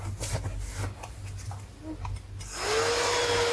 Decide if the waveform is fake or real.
real